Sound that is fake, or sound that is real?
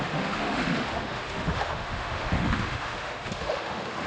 fake